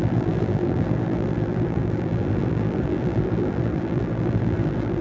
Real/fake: fake